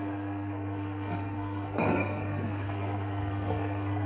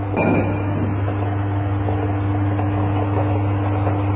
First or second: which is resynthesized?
first